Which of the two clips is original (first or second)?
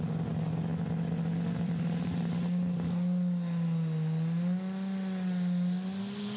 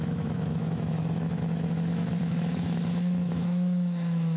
first